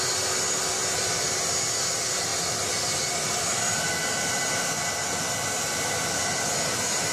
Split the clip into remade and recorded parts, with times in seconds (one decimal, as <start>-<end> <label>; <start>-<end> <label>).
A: 0.0-7.1 recorded